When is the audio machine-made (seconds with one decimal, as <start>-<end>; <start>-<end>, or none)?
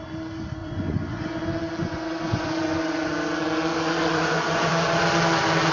0.6-1.4; 1.8-3.1; 3.7-4.7